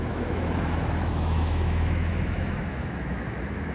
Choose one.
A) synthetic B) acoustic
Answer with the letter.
A